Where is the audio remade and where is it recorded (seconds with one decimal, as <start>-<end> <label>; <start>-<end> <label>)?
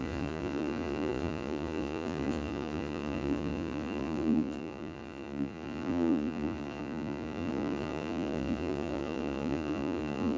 0.0-10.4 remade